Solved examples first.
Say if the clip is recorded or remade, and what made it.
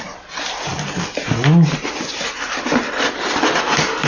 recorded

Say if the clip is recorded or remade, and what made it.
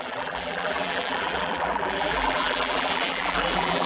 remade, vocoder, BigVGAN v2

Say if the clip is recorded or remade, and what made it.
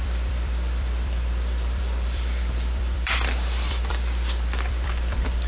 remade, vocoder, BigVGAN v2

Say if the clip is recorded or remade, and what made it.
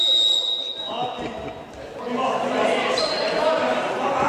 recorded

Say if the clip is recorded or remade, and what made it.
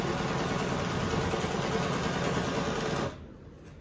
recorded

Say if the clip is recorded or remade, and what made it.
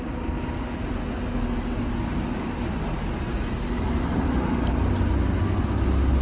recorded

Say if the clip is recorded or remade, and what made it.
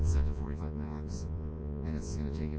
remade, vocoder, Vocos